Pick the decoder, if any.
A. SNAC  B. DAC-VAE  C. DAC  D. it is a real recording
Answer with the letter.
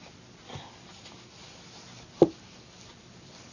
D